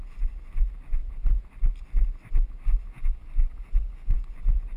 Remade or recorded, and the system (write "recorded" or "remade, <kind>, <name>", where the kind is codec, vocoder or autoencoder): recorded